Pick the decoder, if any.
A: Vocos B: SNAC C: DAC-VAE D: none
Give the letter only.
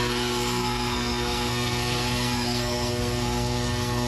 B